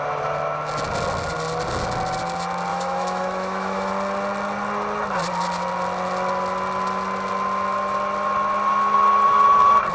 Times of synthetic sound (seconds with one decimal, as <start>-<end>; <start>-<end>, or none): 2.7-3.9